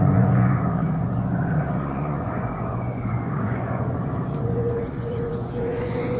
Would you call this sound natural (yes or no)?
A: no